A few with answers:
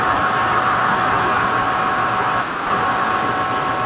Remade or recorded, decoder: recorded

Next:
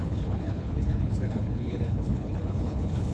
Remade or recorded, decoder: remade, codec, HILCodec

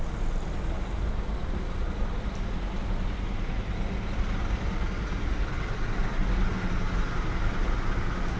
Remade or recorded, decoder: recorded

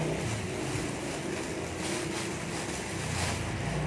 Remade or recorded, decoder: recorded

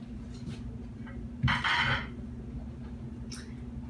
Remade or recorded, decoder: recorded